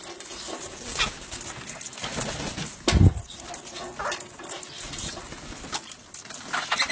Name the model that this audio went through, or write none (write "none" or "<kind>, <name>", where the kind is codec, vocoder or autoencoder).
none